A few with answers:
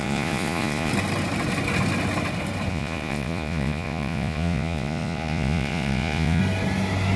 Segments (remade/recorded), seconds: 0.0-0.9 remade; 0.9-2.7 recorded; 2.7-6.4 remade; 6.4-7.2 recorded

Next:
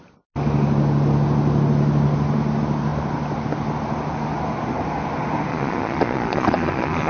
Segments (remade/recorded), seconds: 0.0-5.5 recorded; 5.5-7.1 remade

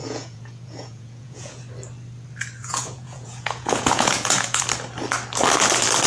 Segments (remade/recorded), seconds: 0.0-1.6 remade; 1.6-2.6 recorded; 2.6-4.6 remade; 4.6-6.1 recorded

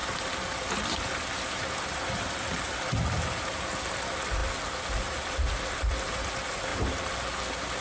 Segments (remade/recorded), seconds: 0.0-7.8 recorded

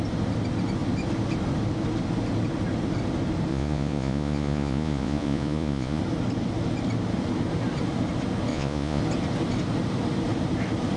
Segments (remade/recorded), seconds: 0.0-3.5 recorded; 3.5-6.0 remade; 6.0-8.5 recorded; 8.5-9.0 remade; 9.0-11.0 recorded